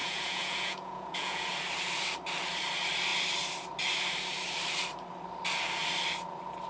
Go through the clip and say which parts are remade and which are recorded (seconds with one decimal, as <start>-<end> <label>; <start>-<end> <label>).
0.0-1.4 remade; 1.4-6.7 recorded